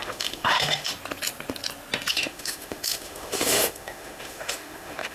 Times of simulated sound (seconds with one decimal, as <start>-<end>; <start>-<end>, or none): 0.0-0.9; 2.1-5.1